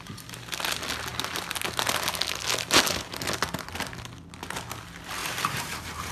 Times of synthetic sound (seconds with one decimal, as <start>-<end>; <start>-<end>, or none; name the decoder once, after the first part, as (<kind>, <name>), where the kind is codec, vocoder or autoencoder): 5.2-6.1 (vocoder, BigVGAN v2)